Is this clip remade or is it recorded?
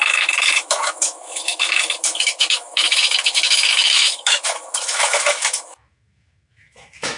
remade